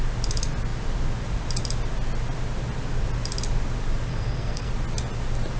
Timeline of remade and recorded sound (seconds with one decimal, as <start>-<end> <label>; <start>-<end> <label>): 0.0-4.1 recorded; 4.1-4.7 remade; 4.7-5.6 recorded